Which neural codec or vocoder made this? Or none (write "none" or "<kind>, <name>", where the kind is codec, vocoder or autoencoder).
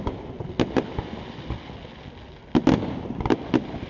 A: none